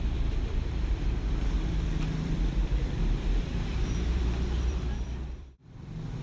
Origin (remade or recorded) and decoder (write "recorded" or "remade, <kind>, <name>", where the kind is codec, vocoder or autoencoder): remade, vocoder, BigVGAN v2